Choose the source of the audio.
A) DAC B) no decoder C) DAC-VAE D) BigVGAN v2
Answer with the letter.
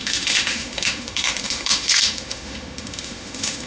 C